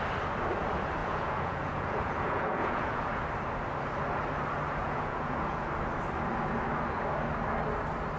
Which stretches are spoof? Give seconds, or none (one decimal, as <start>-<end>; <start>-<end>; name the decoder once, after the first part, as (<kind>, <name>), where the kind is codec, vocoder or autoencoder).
1.0-3.2 (vocoder, Vocos); 4.8-5.7

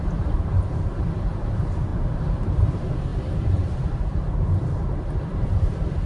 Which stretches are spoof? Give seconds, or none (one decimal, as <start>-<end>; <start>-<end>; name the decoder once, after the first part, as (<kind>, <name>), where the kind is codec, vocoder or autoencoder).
0.0-6.1 (vocoder, BigVGAN v2)